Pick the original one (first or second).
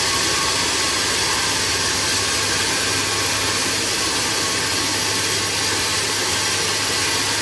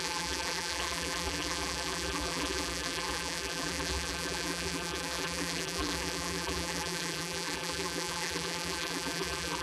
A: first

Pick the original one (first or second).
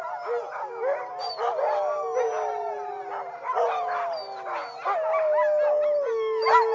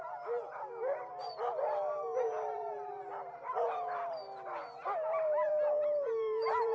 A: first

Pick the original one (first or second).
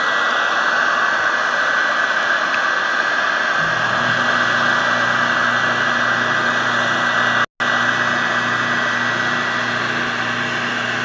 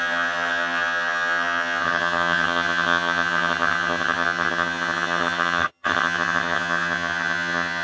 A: first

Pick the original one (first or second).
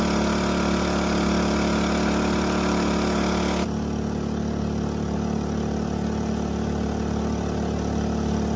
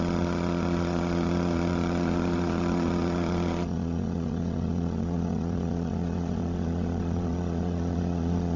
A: first